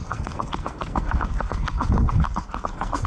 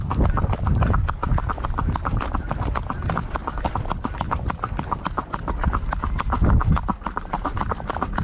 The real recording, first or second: second